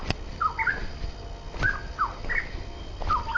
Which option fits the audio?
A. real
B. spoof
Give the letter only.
A